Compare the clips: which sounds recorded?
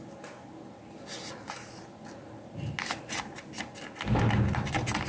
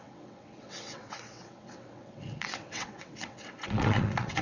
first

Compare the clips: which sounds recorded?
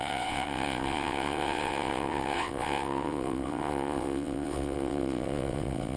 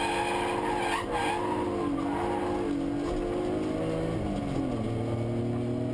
second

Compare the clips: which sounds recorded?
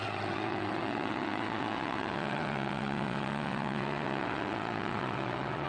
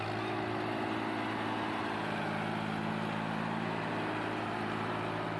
second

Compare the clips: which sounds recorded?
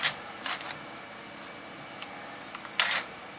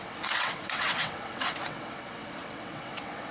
first